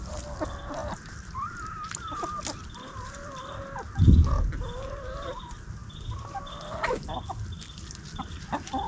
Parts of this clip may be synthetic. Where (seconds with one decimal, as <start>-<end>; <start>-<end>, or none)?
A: none